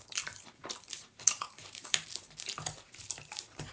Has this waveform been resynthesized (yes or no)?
yes